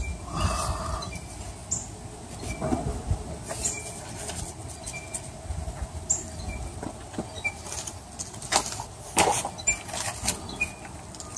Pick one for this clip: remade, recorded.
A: recorded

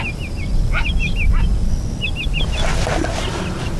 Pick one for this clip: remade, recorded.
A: recorded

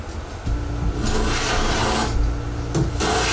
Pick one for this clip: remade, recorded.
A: recorded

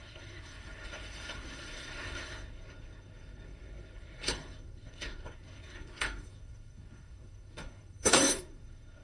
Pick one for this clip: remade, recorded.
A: remade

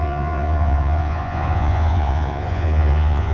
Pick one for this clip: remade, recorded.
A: remade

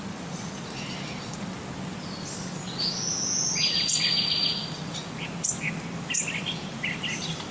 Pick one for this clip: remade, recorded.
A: recorded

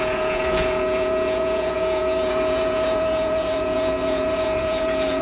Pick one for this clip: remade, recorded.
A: remade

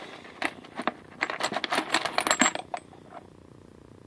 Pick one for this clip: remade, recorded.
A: recorded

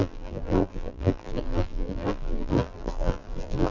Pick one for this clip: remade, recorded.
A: remade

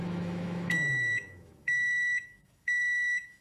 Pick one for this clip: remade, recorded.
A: remade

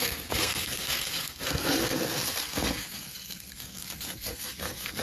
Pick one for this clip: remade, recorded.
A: remade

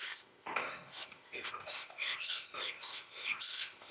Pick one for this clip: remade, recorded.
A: remade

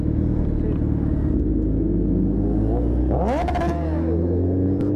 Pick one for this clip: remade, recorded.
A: recorded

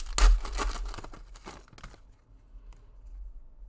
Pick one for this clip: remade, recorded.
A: recorded